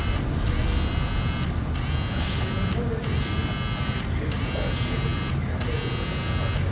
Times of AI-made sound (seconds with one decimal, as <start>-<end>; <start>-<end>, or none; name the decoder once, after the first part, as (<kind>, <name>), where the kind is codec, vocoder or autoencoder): none